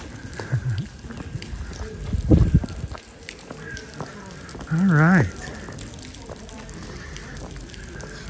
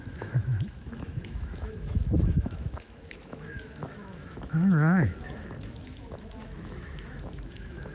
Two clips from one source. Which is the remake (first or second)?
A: second